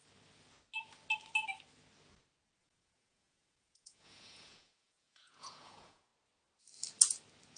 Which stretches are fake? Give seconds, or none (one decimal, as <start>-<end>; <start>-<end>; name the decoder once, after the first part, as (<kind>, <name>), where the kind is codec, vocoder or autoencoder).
2.6-6.1 (vocoder, Vocos)